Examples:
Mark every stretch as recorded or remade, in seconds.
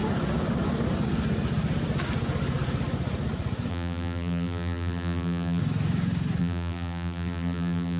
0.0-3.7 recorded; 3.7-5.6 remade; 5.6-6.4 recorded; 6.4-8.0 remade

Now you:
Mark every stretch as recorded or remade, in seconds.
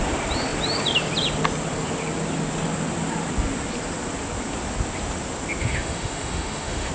0.0-5.6 recorded; 5.6-6.9 remade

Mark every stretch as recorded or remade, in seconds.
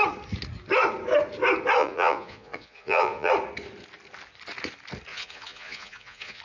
0.0-1.8 recorded; 1.8-3.3 remade; 3.3-5.1 recorded; 5.1-6.4 remade